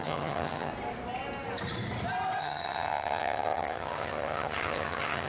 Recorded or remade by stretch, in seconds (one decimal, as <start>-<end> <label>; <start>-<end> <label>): 0.0-0.7 remade; 0.7-2.4 recorded; 2.4-5.3 remade